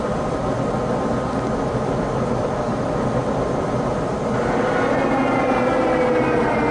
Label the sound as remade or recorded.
recorded